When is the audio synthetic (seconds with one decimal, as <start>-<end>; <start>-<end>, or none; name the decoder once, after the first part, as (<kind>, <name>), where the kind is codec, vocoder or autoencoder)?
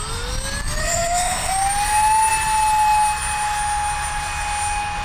0.8-1.5 (codec, SNAC)